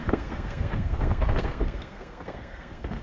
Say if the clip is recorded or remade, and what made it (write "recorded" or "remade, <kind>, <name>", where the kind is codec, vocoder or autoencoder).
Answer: remade, codec, SNAC